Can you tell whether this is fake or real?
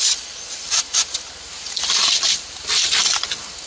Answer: real